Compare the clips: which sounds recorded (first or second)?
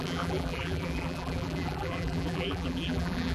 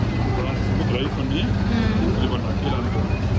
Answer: second